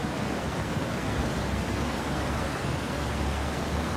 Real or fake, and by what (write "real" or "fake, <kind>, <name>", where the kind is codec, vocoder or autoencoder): fake, codec, SNAC